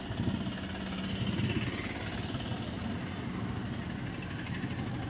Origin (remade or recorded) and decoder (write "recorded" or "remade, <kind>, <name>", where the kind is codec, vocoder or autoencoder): recorded